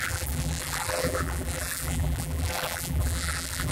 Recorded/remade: remade